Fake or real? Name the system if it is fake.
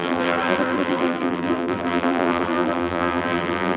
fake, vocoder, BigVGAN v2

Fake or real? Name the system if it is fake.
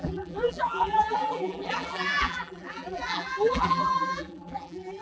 fake, vocoder, BigVGAN v2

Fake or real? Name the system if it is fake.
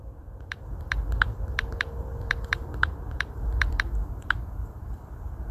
fake, vocoder, BigVGAN v2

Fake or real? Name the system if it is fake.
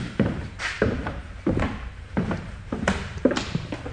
fake, vocoder, BigVGAN v2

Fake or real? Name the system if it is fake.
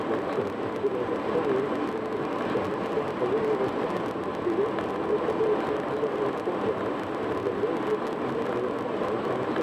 real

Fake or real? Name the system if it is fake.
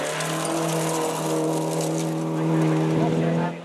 real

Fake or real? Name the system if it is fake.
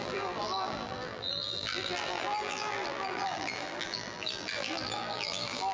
fake, vocoder, BigVGAN v2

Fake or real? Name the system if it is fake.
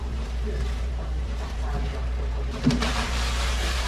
fake, vocoder, BigVGAN v2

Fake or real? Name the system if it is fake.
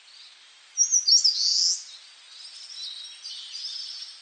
real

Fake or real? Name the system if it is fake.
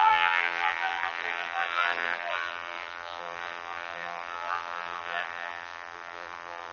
fake, vocoder, BigVGAN v2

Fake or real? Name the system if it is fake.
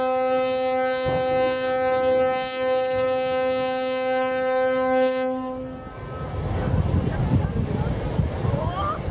real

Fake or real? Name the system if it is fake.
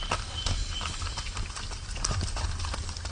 real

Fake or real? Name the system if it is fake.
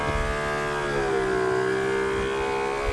real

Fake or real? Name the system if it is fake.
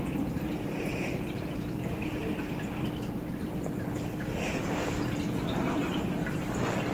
fake, vocoder, BigVGAN v2